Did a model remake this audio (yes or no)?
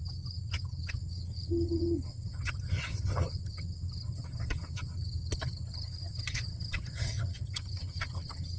yes